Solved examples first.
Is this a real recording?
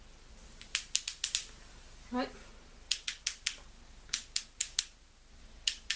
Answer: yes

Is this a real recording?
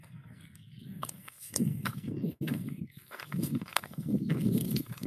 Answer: no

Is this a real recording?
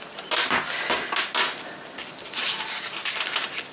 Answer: yes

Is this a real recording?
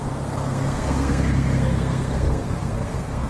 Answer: no